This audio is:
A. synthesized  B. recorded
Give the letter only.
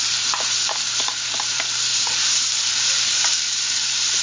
A